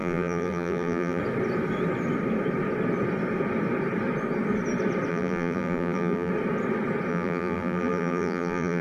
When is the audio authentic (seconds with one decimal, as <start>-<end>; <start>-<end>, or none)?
1.2-5.1; 6.3-7.1